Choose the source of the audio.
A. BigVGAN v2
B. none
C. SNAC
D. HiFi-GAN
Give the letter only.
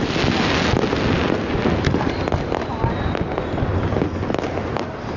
B